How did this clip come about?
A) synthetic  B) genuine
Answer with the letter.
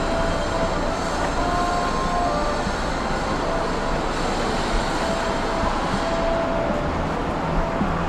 B